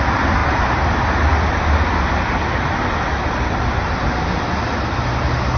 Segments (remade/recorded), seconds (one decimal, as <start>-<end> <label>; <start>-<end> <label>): 0.0-5.6 recorded

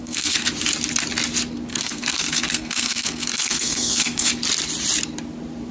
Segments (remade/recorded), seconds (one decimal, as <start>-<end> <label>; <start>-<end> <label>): 0.0-0.5 remade; 0.5-1.7 recorded; 1.7-4.3 remade; 4.3-5.7 recorded

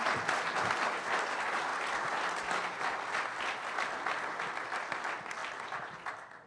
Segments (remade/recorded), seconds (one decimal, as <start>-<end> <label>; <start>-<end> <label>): 0.0-6.5 recorded

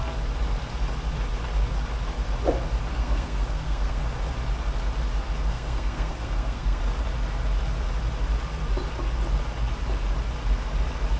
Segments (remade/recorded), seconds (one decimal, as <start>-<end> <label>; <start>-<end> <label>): 0.0-2.9 recorded; 2.9-4.0 remade; 4.0-5.5 recorded; 5.5-6.8 remade; 6.8-11.2 recorded

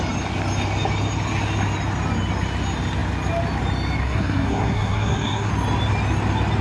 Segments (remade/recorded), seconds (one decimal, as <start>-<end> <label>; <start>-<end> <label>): 0.0-4.0 recorded; 4.0-5.5 remade; 5.5-6.6 recorded

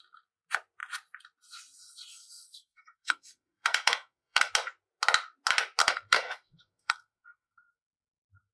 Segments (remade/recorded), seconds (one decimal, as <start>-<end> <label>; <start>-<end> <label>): 0.0-2.1 recorded; 2.1-4.5 remade; 4.5-5.8 recorded; 5.8-8.5 remade

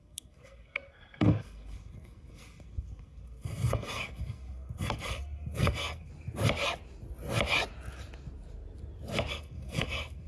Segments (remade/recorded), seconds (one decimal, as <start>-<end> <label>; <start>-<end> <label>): 0.0-6.1 remade; 6.1-9.3 recorded; 9.3-10.3 remade